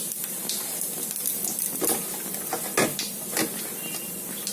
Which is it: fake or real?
real